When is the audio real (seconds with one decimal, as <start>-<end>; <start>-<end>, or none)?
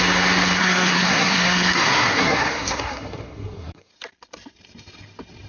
0.0-0.6; 3.9-5.5